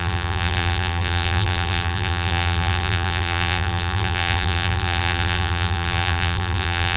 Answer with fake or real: fake